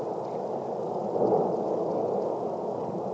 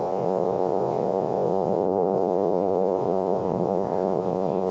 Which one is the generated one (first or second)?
second